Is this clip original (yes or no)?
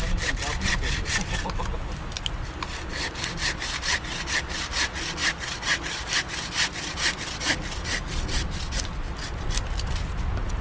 yes